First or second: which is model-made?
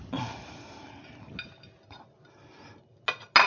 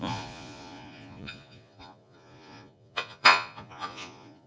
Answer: second